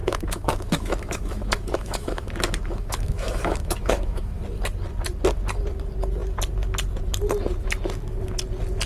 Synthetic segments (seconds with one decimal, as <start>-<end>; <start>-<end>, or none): 0.0-4.4